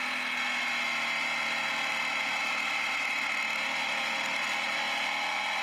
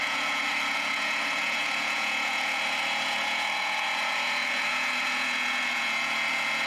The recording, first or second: first